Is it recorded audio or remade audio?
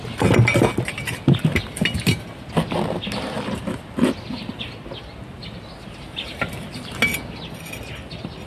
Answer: recorded